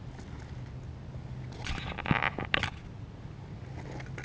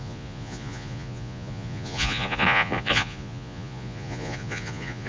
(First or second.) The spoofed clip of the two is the second